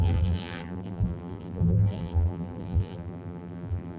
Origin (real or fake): fake